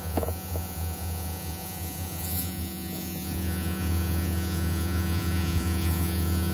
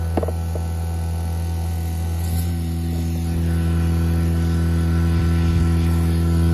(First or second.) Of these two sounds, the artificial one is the first